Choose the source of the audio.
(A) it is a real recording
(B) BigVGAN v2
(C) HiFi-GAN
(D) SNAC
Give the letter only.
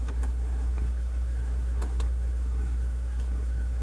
D